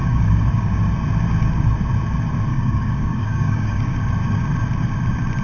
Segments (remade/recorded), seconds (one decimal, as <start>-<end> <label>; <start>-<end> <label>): 0.0-0.7 remade; 0.7-2.5 recorded; 2.5-4.0 remade; 4.0-5.4 recorded